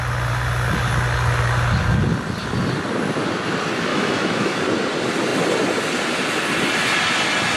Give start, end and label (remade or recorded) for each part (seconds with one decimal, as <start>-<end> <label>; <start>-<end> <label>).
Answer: 0.0-3.9 recorded; 3.9-4.6 remade; 4.6-7.6 recorded